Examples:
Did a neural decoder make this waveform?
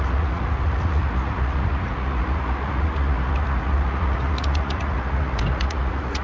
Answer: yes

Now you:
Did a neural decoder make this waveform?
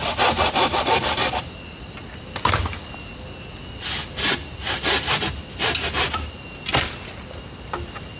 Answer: no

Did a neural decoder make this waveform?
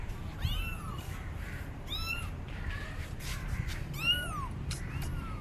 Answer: yes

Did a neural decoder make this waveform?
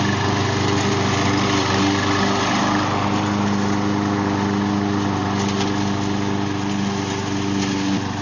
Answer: no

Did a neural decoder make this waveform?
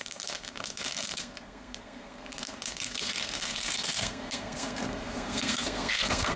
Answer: yes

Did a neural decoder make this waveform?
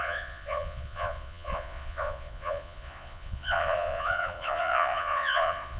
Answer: yes